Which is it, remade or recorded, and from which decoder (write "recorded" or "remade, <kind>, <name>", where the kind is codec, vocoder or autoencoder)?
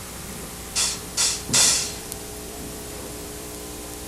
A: remade, vocoder, BigVGAN v2